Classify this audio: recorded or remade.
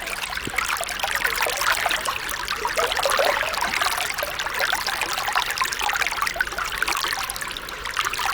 recorded